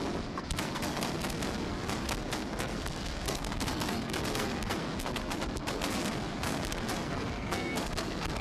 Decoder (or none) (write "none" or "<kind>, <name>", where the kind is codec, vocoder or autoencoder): codec, SNAC